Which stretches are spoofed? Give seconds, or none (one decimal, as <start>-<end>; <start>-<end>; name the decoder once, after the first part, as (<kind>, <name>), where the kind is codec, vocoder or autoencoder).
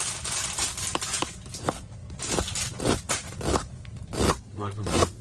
4.3-5.2 (codec, SNAC)